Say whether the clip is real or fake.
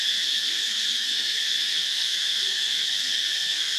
fake